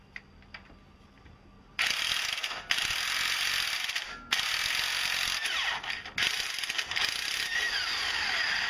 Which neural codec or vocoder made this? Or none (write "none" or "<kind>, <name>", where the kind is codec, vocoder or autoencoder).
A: none